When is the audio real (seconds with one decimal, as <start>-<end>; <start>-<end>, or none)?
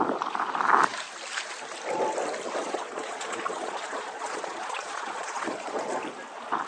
0.0-2.6; 5.8-6.7